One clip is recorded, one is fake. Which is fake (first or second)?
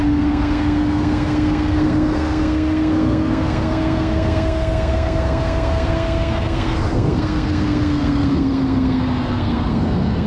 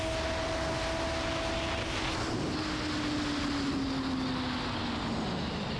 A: first